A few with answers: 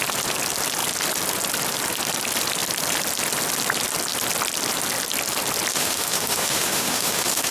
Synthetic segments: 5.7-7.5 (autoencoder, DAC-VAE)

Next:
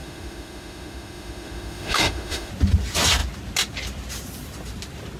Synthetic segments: 0.0-2.5 (autoencoder, DAC-VAE)

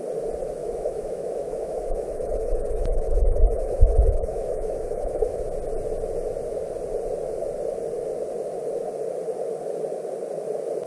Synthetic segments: 0.6-5.4 (autoencoder, DAC-VAE)

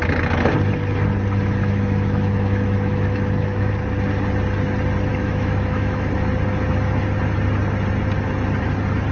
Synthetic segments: 1.6-3.7 (autoencoder, DAC-VAE); 5.1-6.1

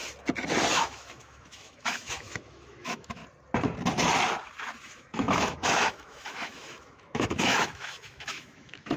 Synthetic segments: 0.7-3.2 (autoencoder, DAC-VAE); 4.8-9.0

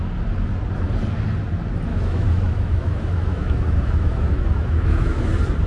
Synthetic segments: 1.9-5.3 (autoencoder, DAC-VAE)

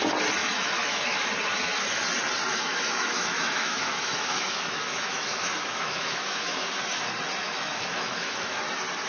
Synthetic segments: 0.4-1.3 (autoencoder, DAC-VAE); 2.5-6.7; 7.4-8.6